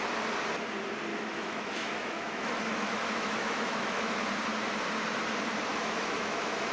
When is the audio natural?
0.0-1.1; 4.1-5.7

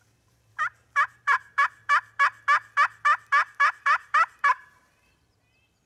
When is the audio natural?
1.8-3.7

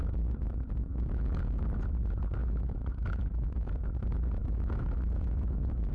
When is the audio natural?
0.0-0.9; 1.6-2.4; 3.7-4.4

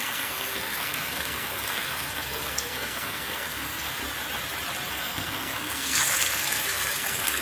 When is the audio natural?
4.0-4.9

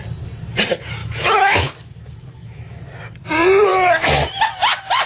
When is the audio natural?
0.0-1.0; 2.9-5.1